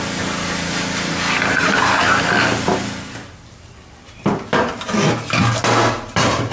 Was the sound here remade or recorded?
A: recorded